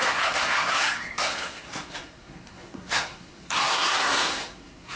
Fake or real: fake